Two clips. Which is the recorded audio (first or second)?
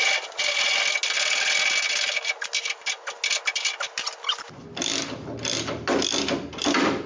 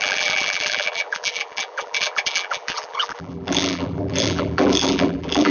first